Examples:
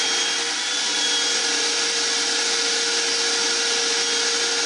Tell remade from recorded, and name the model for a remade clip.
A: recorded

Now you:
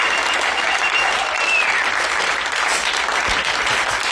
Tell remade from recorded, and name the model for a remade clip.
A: recorded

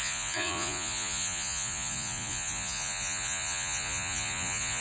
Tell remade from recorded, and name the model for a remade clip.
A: remade, vocoder, Vocos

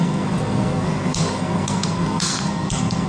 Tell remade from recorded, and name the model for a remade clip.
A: remade, codec, SNAC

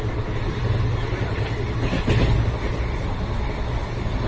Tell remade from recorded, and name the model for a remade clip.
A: recorded